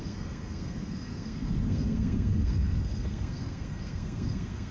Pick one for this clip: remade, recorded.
remade